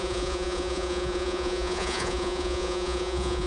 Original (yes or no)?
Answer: no